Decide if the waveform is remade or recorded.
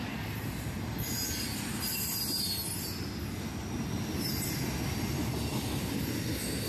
recorded